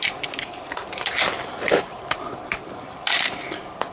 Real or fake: real